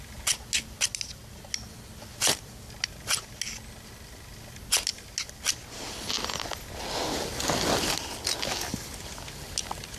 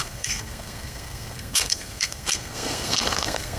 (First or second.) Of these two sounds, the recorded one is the first